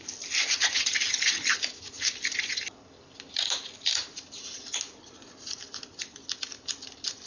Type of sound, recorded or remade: recorded